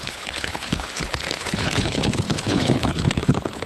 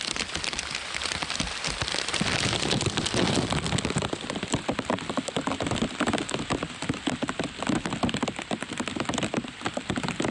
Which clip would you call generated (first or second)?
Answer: first